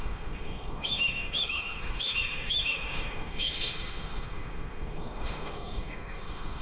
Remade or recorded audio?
remade